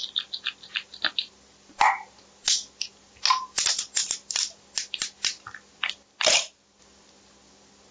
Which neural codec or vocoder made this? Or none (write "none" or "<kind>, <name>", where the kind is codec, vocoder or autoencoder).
none